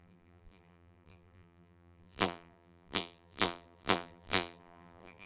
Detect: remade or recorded remade